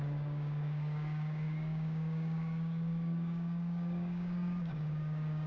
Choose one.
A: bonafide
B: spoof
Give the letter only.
B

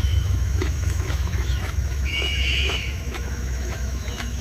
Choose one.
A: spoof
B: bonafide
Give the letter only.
A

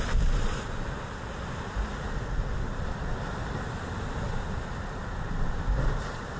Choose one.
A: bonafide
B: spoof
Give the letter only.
A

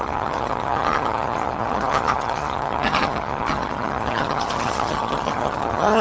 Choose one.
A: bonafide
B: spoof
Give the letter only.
B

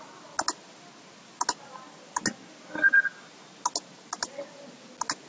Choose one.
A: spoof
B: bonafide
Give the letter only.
B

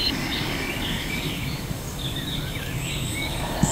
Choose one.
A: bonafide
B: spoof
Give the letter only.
B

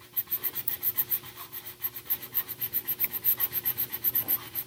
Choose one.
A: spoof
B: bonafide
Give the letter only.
A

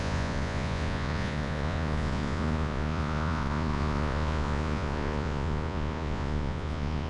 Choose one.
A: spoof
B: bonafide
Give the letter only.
A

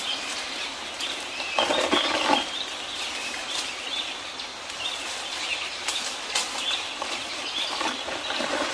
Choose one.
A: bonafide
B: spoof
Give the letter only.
A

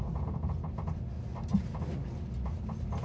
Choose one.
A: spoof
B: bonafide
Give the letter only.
B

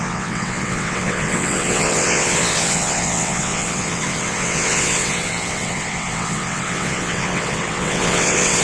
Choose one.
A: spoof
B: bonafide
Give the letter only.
A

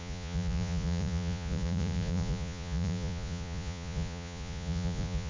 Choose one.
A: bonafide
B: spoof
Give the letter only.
B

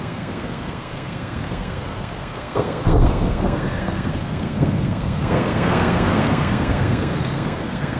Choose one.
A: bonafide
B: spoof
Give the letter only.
B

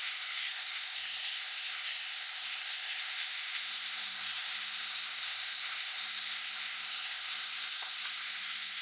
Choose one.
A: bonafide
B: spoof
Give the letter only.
B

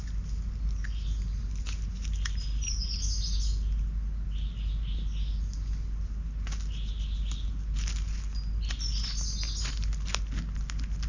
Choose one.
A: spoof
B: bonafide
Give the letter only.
B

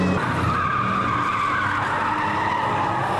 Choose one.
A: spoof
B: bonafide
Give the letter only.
B